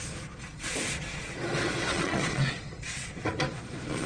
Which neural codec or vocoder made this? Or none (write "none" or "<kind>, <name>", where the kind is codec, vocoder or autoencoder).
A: vocoder, Vocos